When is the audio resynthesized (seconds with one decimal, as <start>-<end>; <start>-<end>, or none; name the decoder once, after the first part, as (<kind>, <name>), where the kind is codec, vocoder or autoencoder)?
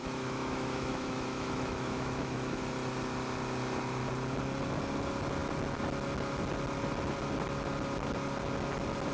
0.0-2.6 (autoencoder, DAC-VAE)